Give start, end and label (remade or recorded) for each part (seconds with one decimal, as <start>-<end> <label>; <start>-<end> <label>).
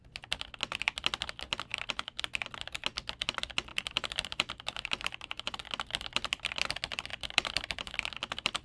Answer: 0.0-1.7 recorded; 1.7-2.2 remade; 2.2-3.7 recorded; 3.7-5.6 remade; 5.6-7.1 recorded; 7.1-7.9 remade; 7.9-8.6 recorded